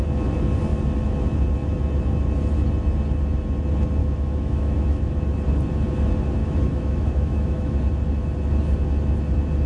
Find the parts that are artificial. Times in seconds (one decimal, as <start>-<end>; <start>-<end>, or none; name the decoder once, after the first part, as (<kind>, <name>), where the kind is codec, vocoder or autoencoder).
4.0-5.1 (autoencoder, DAC-VAE); 6.4-7.8